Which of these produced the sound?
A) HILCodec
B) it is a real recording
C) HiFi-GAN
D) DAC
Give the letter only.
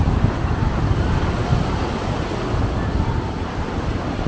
B